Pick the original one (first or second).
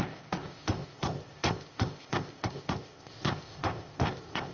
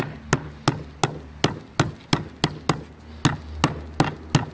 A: second